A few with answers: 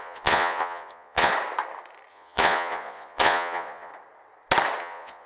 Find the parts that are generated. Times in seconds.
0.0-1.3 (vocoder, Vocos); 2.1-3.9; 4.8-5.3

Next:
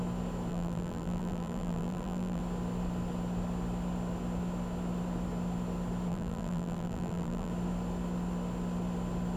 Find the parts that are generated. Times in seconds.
0.5-2.4 (vocoder, BigVGAN v2); 6.1-7.5

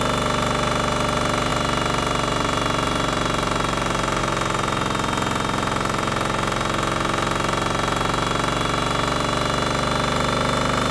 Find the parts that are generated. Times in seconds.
none

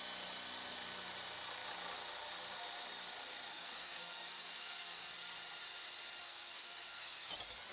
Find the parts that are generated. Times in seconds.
3.5-5.1 (codec, SNAC); 6.2-7.3

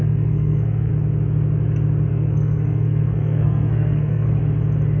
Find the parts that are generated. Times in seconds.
0.0-0.9 (codec, SNAC); 2.1-4.4

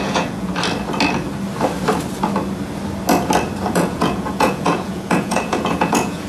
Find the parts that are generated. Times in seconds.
0.0-0.5 (vocoder, Vocos); 3.7-6.3

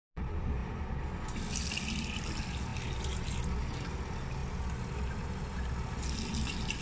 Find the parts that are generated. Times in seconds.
none

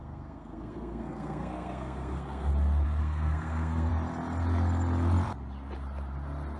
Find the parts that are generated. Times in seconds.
0.0-2.5 (codec, SNAC); 3.0-3.9